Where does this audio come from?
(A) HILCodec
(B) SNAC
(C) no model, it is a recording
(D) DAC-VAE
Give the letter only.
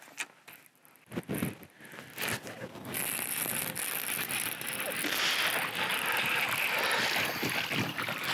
C